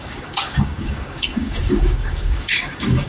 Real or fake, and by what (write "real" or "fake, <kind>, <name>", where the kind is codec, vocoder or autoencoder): fake, codec, DAC